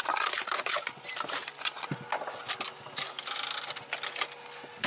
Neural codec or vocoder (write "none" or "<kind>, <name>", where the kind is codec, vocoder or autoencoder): none